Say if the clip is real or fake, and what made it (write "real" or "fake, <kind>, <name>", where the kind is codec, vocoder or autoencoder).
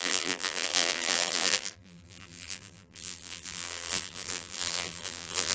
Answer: fake, vocoder, BigVGAN v2